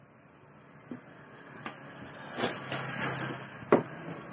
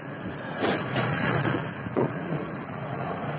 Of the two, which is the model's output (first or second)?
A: second